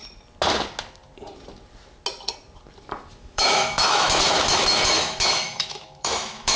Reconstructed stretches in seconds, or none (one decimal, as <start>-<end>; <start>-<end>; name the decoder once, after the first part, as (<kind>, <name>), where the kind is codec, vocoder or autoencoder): 3.1-6.6 (autoencoder, DAC-VAE)